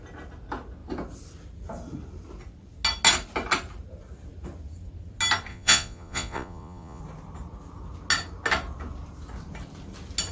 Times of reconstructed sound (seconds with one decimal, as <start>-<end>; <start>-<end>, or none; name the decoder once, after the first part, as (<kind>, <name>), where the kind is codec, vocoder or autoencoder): 5.5-7.0 (vocoder, Vocos)